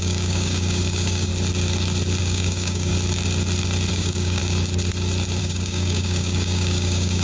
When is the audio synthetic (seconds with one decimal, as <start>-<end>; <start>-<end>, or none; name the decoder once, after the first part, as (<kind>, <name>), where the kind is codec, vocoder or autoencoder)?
0.0-1.3 (codec, DAC); 2.2-2.9; 3.9-4.4; 5.4-7.2